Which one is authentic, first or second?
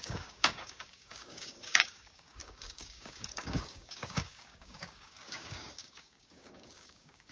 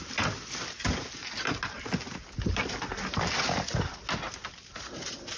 second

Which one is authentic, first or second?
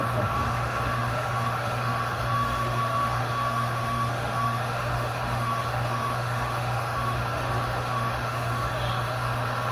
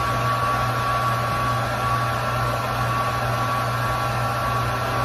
second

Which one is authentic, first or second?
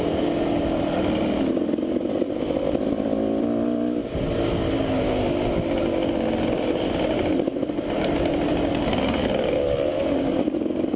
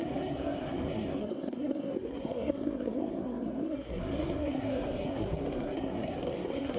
first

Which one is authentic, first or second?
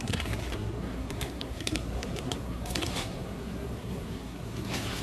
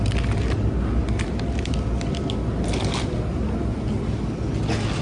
second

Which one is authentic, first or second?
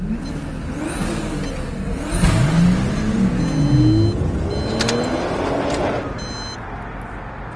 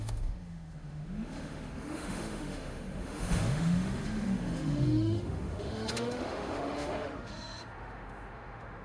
first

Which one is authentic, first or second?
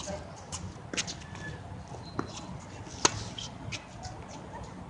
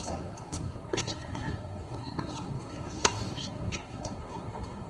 first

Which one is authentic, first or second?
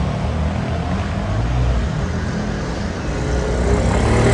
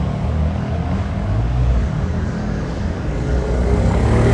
first